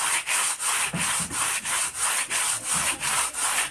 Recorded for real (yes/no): yes